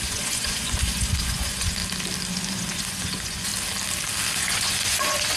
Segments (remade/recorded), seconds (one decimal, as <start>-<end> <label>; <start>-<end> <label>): 0.0-1.8 remade; 1.8-2.3 recorded; 2.3-3.5 remade; 3.5-4.4 recorded; 4.4-5.4 remade